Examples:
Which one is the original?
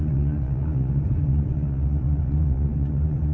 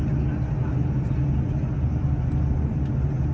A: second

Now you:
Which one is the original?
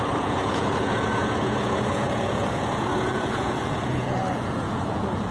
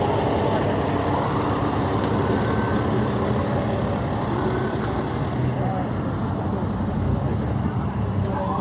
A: second